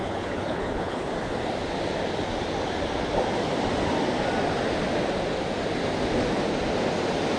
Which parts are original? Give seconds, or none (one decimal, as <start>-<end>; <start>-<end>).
1.1-7.4